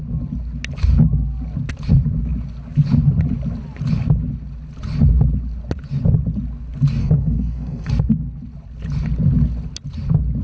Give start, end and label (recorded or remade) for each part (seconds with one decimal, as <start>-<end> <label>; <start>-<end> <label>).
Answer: 0.0-7.0 recorded; 7.0-7.9 remade; 7.9-10.4 recorded